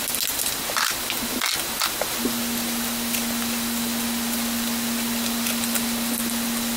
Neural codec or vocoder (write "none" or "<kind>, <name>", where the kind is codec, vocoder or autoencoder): none